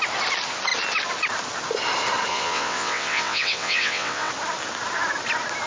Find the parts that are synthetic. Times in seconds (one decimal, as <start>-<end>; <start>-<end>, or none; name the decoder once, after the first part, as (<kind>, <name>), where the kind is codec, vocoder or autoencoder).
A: 2.3-4.3 (vocoder, WaveNeXt)